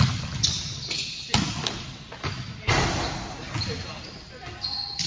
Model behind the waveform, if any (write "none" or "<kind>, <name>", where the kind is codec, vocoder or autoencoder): none